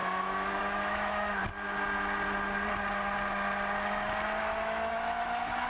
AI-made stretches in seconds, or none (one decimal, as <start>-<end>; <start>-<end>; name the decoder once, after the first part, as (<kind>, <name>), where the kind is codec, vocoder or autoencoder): 0.0-1.4 (autoencoder, DAC-VAE); 4.4-5.7